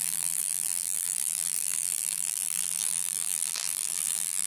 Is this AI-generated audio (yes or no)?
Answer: yes